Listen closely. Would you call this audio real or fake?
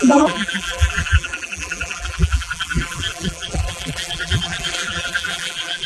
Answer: fake